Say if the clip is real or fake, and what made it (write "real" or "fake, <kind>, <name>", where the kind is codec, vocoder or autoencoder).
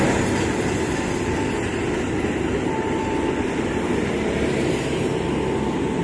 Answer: real